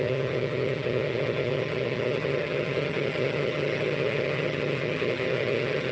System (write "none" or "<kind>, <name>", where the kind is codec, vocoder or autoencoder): vocoder, HiFi-GAN